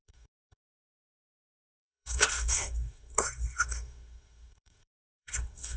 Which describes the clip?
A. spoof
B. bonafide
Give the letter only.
A